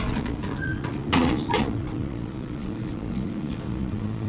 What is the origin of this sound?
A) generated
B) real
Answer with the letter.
A